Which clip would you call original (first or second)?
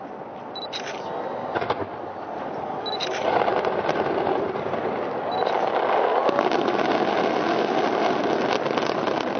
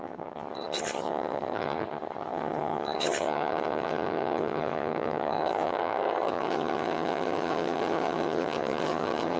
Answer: first